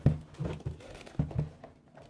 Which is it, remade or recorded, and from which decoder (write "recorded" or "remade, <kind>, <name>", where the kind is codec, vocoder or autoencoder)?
recorded